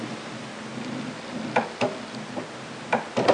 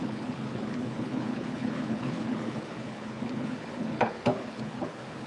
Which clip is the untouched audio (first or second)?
first